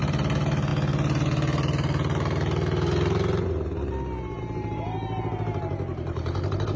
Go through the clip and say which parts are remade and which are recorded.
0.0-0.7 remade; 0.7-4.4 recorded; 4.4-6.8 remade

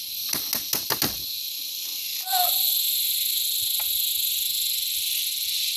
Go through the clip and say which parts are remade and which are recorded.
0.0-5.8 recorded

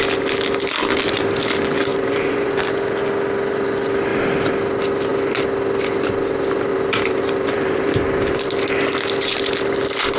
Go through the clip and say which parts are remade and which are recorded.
0.0-1.9 recorded; 1.9-2.5 remade; 2.5-6.7 recorded; 6.7-8.5 remade; 8.5-10.2 recorded

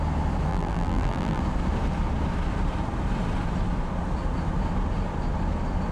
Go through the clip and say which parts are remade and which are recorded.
0.0-0.5 recorded; 0.5-1.4 remade; 1.4-5.9 recorded

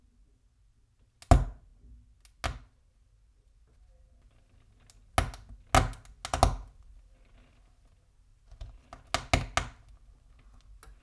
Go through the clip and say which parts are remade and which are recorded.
0.0-8.3 recorded; 8.3-8.8 remade; 8.8-11.0 recorded

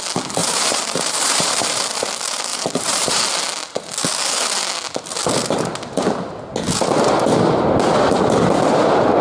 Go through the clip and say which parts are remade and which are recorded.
0.0-0.4 recorded; 0.4-2.1 remade; 2.1-2.5 recorded; 2.5-3.3 remade; 3.3-9.2 recorded

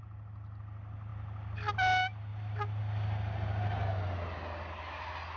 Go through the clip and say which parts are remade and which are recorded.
0.0-2.3 recorded; 2.3-2.8 remade; 2.8-5.4 recorded